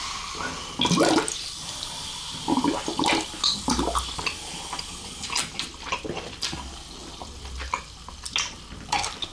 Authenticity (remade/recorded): recorded